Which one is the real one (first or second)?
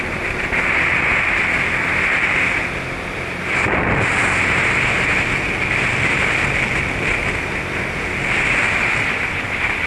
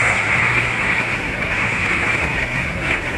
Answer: first